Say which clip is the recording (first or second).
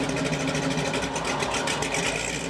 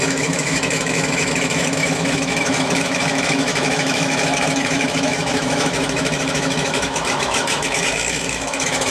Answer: first